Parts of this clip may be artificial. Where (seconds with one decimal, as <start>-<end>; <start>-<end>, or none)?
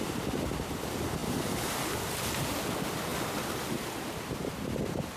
1.2-1.9; 3.1-4.5